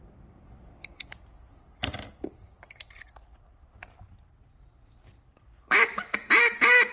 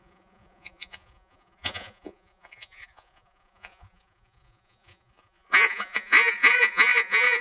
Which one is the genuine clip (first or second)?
first